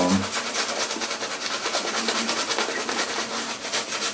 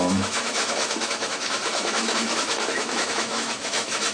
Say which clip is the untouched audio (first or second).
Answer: first